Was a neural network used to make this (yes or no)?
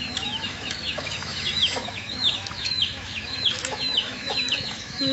yes